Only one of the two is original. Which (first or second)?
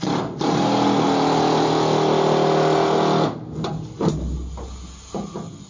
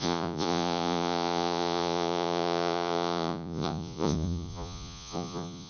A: first